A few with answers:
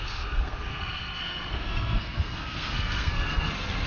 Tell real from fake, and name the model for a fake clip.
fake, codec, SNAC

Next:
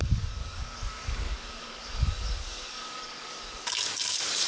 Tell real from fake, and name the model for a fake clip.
fake, codec, DAC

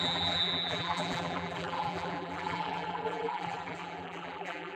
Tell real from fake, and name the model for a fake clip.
fake, vocoder, BigVGAN v2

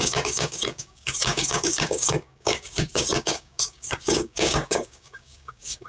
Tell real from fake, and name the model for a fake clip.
fake, codec, DAC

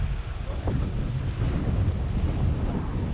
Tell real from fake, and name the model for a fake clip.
real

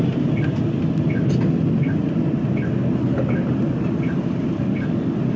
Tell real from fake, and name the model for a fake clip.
real